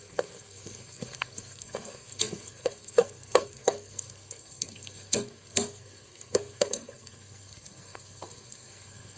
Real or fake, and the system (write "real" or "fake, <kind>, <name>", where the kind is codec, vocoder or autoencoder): fake, codec, SNAC